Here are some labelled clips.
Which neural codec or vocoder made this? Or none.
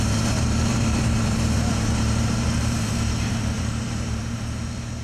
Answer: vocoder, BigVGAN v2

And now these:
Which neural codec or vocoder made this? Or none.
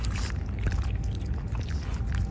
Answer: none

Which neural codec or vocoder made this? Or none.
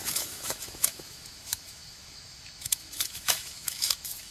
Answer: autoencoder, DAC-VAE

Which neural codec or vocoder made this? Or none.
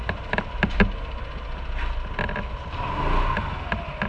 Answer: none